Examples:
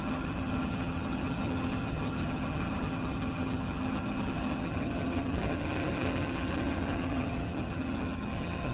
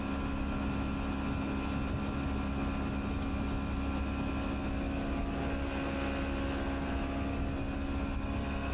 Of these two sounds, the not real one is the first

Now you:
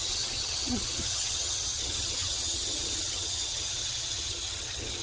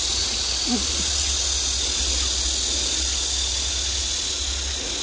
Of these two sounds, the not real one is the first